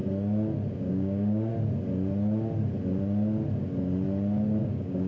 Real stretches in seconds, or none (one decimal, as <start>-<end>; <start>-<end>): 0.0-0.9; 1.5-4.6